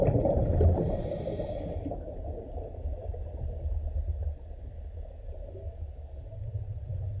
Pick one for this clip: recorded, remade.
recorded